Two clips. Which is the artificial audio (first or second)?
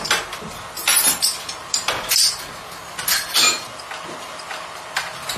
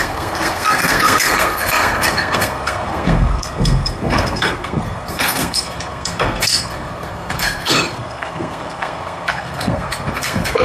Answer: second